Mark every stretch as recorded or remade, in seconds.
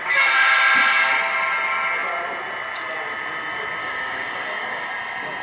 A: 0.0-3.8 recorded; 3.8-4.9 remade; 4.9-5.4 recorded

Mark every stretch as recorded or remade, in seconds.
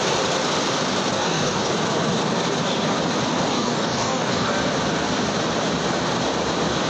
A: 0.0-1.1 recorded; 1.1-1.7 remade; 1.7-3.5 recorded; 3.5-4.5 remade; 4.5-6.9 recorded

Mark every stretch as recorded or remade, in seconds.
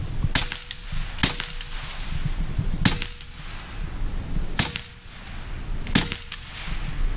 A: 0.0-7.2 recorded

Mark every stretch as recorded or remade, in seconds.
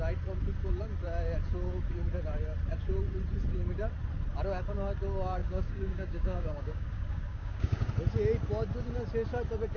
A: 0.0-5.4 recorded; 5.4-7.9 remade; 7.9-9.8 recorded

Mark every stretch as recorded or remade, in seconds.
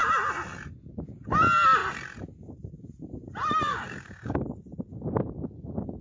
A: 0.0-3.7 recorded; 3.7-4.9 remade; 4.9-6.0 recorded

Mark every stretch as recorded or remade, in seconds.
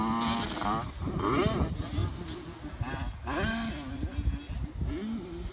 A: 0.0-5.5 recorded